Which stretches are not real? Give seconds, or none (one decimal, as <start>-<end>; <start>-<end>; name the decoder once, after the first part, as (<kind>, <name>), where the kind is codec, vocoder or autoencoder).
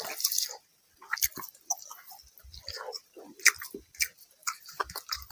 4.4-5.3 (vocoder, BigVGAN v2)